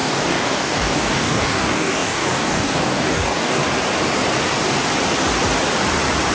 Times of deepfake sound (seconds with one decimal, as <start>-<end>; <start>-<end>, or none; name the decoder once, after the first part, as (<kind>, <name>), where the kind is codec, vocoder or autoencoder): 0.0-3.6 (codec, DAC)